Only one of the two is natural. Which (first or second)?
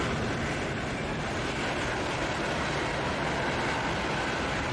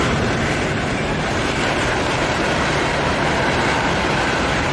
first